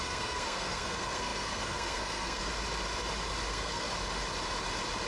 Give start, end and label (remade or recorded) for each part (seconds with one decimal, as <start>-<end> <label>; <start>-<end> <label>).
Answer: 0.0-2.5 remade; 2.5-3.5 recorded; 3.5-3.9 remade; 3.9-5.1 recorded